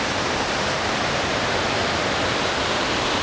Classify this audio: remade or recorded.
recorded